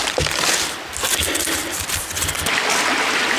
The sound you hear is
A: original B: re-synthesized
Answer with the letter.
A